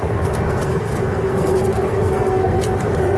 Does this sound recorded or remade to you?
remade